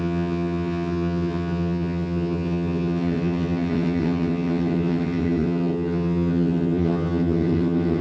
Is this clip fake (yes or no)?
yes